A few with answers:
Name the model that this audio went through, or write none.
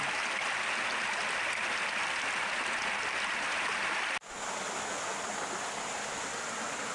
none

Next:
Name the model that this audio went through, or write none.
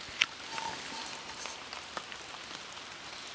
none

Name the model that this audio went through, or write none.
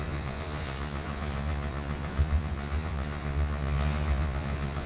vocoder, Vocos